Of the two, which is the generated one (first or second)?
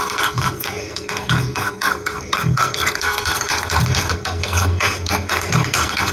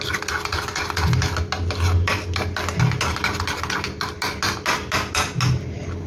first